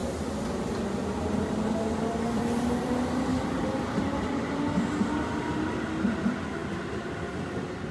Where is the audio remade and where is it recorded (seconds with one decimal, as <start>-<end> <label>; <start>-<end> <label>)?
0.0-3.3 recorded; 3.3-5.4 remade; 5.4-7.9 recorded